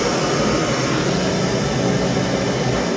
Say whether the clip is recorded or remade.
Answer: recorded